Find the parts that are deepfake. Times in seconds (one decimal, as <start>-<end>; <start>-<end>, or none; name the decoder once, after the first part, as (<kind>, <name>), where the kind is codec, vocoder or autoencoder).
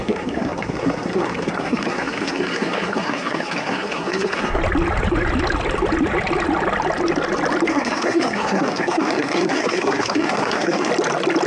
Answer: 0.0-4.6 (codec, SNAC); 7.7-10.9